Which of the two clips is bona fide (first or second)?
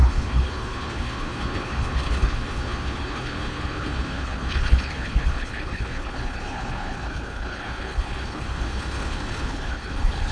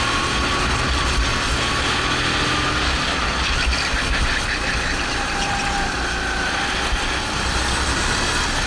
second